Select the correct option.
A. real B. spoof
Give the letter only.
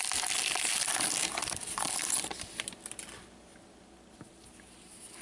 A